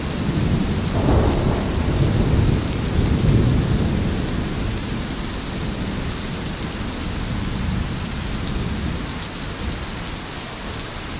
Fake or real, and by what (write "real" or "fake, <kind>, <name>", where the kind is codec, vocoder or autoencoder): real